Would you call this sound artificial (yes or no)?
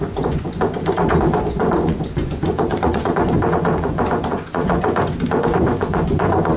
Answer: yes